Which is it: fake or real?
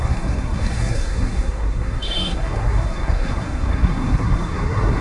fake